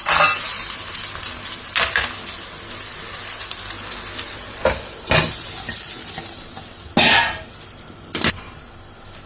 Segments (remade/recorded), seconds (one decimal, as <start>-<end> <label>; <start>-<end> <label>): 0.0-9.3 recorded